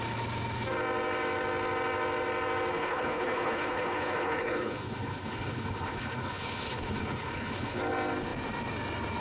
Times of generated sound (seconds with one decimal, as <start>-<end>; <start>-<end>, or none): 2.7-7.8